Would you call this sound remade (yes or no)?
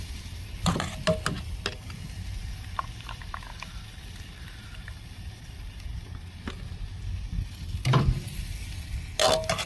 no